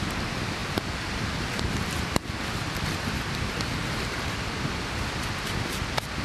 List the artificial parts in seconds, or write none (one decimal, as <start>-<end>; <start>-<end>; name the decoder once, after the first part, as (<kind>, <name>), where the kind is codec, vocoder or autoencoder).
none